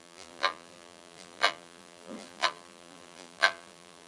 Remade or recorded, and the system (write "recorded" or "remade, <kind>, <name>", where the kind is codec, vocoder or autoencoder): remade, vocoder, BigVGAN v2